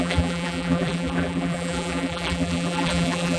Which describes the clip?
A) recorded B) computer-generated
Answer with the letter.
B